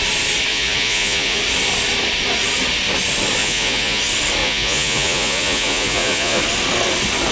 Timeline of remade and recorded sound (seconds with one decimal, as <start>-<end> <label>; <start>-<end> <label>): 0.0-0.5 recorded; 0.5-1.4 remade; 1.4-3.4 recorded; 3.4-4.0 remade; 4.0-4.4 recorded; 4.4-6.4 remade; 6.4-7.3 recorded